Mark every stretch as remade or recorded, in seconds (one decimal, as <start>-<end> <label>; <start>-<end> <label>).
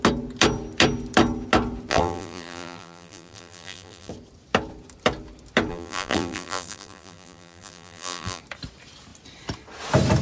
0.0-1.9 recorded; 1.9-4.1 remade; 4.1-5.7 recorded; 5.7-8.4 remade; 8.4-10.2 recorded